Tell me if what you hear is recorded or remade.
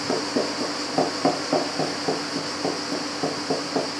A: recorded